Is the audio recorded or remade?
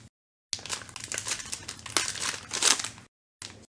recorded